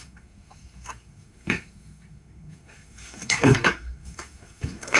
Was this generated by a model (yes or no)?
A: yes